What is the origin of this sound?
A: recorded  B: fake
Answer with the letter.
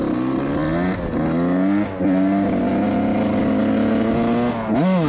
A